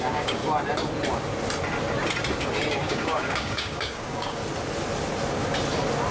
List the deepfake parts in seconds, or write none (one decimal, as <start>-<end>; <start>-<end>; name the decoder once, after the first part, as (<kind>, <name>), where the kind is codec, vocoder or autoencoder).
0.0-0.4 (codec, DAC); 2.7-4.4